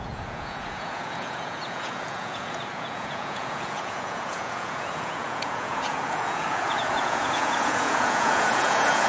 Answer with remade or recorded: remade